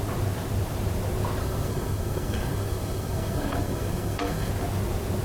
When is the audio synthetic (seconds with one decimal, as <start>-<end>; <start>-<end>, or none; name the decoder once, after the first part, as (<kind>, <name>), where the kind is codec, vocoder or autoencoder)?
1.4-4.5 (codec, SNAC)